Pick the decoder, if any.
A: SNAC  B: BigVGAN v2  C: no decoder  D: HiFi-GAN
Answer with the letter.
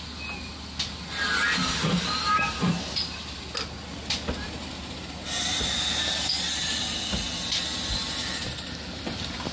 C